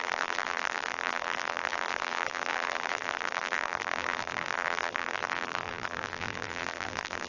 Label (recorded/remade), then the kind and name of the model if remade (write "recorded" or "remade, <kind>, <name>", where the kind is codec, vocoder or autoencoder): remade, vocoder, BigVGAN v2